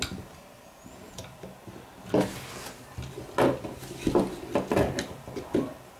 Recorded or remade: recorded